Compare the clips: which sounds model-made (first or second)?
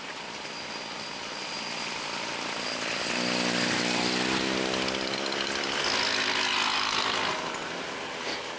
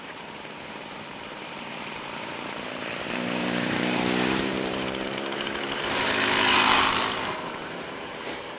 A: second